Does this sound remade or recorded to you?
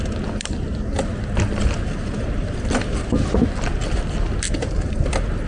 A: recorded